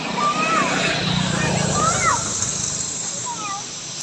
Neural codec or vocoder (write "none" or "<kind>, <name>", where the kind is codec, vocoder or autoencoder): none